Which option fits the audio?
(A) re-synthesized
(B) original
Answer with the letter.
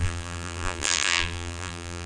A